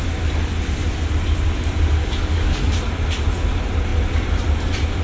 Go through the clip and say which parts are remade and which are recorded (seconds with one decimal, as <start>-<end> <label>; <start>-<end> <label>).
0.0-2.0 recorded; 2.0-2.7 remade; 2.7-5.0 recorded